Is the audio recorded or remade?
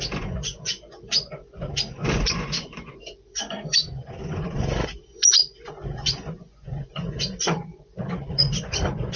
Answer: remade